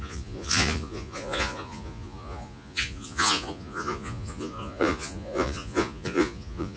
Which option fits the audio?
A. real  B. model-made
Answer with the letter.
B